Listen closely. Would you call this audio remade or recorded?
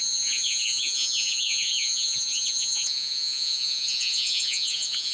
remade